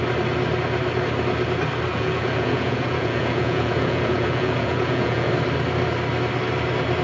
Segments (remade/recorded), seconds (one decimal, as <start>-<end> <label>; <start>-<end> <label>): 0.0-1.9 recorded; 1.9-5.3 remade; 5.3-7.0 recorded